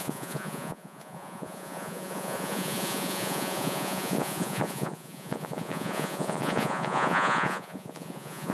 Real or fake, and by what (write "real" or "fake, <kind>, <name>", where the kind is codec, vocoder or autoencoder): fake, vocoder, Vocos